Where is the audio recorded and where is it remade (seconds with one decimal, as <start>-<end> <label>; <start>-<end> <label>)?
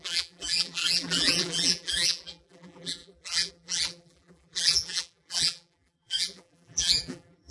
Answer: 0.0-7.5 remade